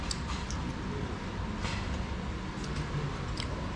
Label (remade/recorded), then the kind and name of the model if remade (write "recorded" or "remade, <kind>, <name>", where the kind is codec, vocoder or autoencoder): recorded